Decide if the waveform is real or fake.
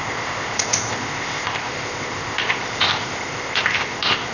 fake